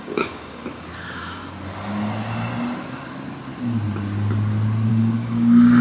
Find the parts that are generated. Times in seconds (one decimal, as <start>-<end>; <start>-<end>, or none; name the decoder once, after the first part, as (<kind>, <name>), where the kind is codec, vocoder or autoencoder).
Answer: 0.0-1.4 (codec, DAC); 4.9-5.8